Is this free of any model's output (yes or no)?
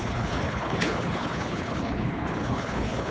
no